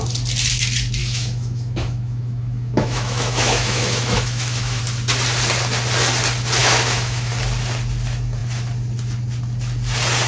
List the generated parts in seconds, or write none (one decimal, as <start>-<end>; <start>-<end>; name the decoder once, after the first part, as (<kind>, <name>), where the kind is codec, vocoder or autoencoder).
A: 1.0-4.8 (autoencoder, DAC-VAE); 6.6-7.3